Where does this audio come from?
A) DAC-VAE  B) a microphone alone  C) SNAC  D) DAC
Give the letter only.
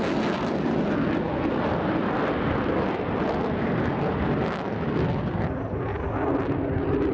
B